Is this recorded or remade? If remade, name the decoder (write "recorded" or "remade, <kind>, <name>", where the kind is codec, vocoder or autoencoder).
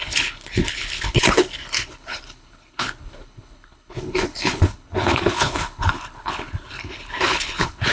remade, codec, HILCodec